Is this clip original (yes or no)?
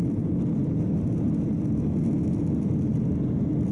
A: yes